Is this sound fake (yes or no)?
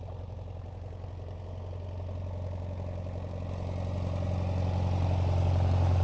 no